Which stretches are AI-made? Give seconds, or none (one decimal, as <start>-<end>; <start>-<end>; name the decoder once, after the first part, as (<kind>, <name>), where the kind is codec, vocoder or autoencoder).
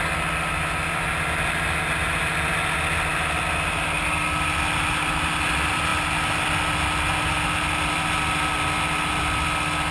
none